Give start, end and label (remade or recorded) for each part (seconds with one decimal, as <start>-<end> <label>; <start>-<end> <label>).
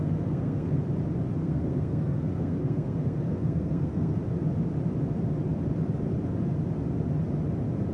0.0-0.8 remade; 0.8-1.4 recorded; 1.4-4.2 remade; 4.2-7.9 recorded